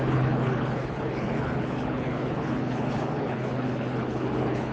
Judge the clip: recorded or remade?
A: remade